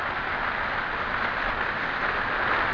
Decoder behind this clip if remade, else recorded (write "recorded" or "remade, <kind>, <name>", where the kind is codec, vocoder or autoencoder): recorded